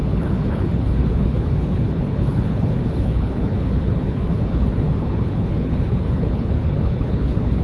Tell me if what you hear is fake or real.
fake